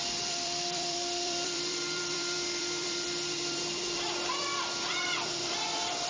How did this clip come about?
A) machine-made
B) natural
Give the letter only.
A